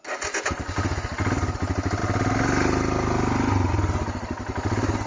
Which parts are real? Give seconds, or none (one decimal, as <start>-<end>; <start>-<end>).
0.0-5.1